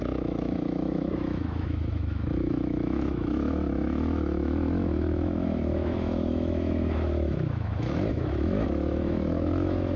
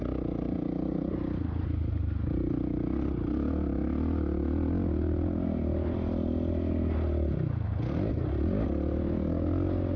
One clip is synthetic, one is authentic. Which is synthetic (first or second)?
first